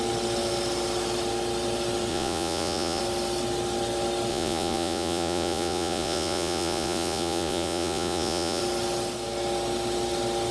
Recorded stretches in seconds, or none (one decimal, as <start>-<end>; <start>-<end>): 0.0-2.1; 3.0-4.3; 8.6-10.5